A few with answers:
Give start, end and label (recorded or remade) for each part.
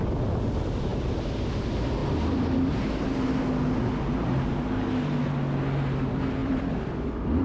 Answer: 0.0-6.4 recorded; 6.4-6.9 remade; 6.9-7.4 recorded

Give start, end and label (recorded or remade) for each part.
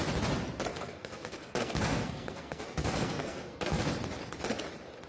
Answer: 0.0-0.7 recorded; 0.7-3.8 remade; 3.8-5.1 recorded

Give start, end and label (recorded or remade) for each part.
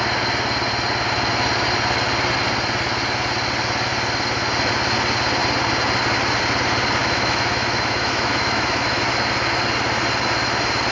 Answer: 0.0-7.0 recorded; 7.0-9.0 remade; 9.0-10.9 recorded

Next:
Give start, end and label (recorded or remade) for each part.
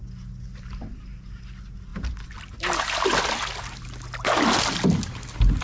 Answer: 0.0-5.6 recorded